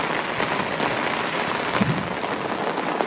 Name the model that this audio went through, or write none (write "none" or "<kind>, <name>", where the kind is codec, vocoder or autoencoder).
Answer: none